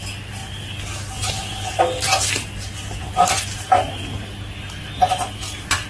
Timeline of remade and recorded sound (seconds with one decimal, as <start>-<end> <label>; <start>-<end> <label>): 0.0-5.9 recorded